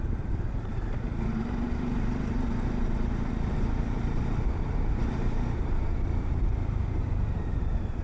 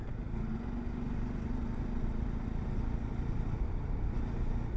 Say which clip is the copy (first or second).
first